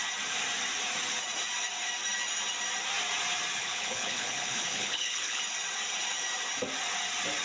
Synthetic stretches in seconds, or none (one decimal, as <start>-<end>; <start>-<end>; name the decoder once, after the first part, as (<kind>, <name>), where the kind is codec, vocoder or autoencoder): 3.6-5.4 (codec, HILCodec)